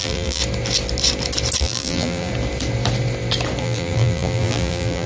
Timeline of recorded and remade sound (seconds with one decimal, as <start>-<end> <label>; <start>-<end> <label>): 0.0-0.4 remade; 0.4-1.6 recorded; 1.6-2.3 remade; 2.3-3.6 recorded; 3.6-5.1 remade